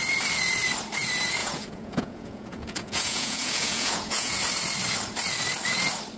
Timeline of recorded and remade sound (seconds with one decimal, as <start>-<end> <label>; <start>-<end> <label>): 0.0-1.4 recorded; 1.4-4.4 remade; 4.4-6.2 recorded